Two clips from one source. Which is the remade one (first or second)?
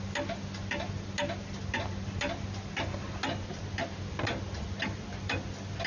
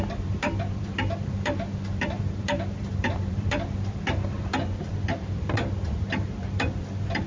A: second